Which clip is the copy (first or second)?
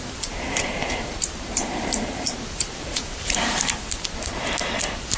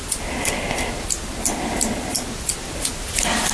first